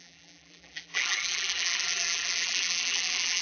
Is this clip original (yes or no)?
no